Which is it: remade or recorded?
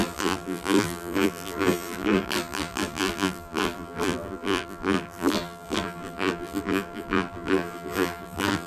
remade